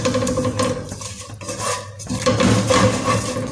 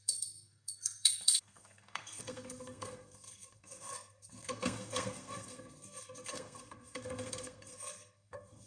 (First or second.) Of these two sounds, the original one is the first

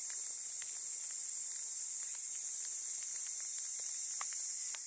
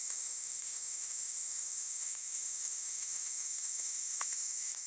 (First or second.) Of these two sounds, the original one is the first